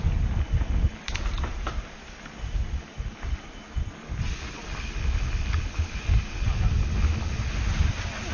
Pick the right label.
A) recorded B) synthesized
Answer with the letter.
A